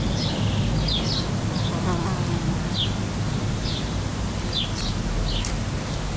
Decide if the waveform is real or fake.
real